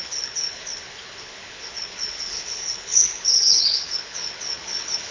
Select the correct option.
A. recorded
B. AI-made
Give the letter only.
B